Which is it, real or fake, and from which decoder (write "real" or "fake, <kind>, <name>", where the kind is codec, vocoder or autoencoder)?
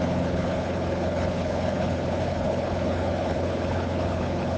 fake, codec, HILCodec